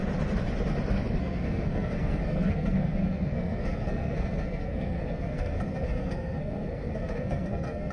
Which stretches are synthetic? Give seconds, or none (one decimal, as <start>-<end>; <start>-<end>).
1.2-7.9